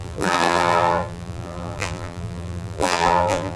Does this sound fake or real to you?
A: fake